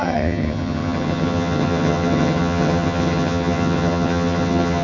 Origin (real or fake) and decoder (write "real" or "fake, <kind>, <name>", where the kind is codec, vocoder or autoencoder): fake, vocoder, HiFi-GAN